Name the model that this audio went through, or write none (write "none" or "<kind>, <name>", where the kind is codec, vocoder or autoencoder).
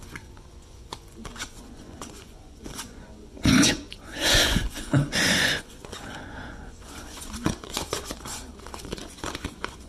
vocoder, Vocos